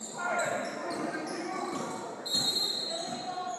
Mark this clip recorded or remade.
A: remade